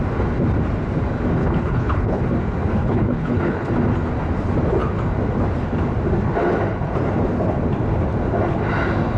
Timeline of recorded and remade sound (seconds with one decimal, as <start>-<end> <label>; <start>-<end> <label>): 0.0-1.4 recorded; 1.4-2.2 remade; 2.2-2.8 recorded; 2.8-3.7 remade; 3.7-9.2 recorded